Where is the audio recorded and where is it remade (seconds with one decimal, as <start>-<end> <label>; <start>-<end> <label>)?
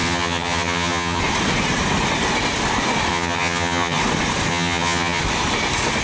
0.0-1.2 remade; 1.2-3.1 recorded; 3.1-4.0 remade; 4.0-4.5 recorded; 4.5-5.2 remade; 5.2-6.0 recorded